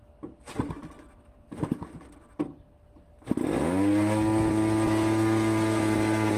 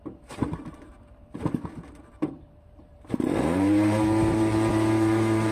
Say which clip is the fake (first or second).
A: second